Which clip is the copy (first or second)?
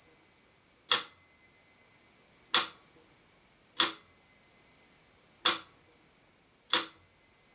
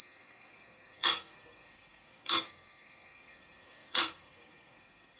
second